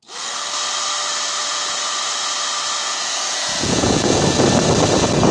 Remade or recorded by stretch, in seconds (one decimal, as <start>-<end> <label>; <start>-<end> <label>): 0.0-1.4 recorded; 1.4-1.9 remade; 1.9-2.8 recorded; 2.8-4.2 remade; 4.2-5.3 recorded